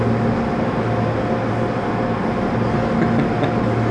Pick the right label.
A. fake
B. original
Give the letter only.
B